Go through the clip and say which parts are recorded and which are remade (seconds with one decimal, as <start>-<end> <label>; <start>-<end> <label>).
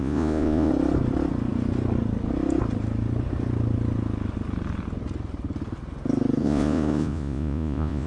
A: 0.0-0.7 remade; 0.7-6.4 recorded; 6.4-8.1 remade